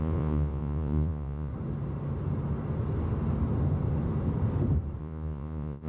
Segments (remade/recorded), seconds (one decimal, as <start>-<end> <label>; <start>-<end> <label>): 0.0-1.5 remade; 1.5-5.0 recorded; 5.0-5.9 remade